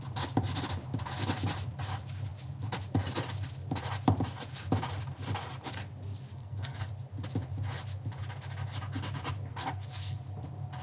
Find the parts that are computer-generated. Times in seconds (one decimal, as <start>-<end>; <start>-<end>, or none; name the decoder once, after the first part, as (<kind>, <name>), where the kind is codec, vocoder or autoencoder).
6.3-6.9 (codec, SNAC); 9.5-10.2